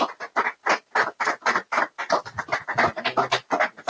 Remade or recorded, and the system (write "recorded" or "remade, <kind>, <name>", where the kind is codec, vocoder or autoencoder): recorded